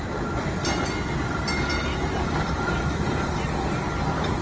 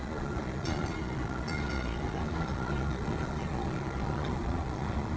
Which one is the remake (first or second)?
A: second